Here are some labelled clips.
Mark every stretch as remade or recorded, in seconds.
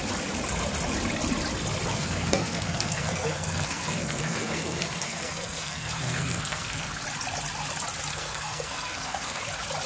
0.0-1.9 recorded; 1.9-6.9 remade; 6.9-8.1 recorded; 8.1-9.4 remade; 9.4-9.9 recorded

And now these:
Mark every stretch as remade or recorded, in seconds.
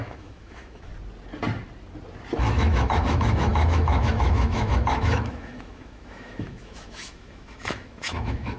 0.0-0.9 remade; 0.9-2.4 recorded; 2.4-8.6 remade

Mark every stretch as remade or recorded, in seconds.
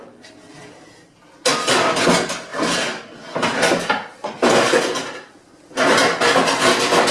0.0-7.1 recorded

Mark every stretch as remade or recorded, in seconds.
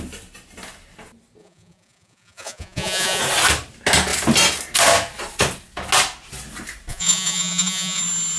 0.0-1.4 recorded; 1.4-3.2 remade; 3.2-6.9 recorded; 6.9-8.0 remade; 8.0-8.4 recorded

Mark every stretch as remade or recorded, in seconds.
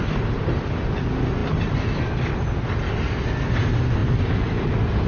0.0-5.1 recorded